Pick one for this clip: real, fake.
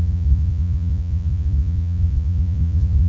fake